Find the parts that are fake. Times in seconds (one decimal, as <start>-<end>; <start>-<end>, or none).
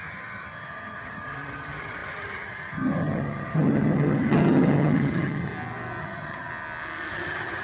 0.0-5.5; 6.0-6.5; 7.1-7.6